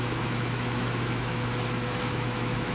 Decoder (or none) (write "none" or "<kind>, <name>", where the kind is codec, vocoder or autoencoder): autoencoder, DAC-VAE